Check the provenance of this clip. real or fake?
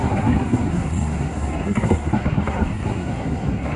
fake